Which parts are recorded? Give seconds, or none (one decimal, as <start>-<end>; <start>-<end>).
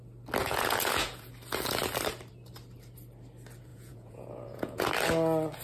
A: 0.0-0.4; 1.3-3.7; 4.9-5.6